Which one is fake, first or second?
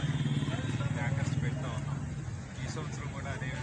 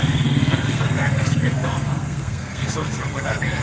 second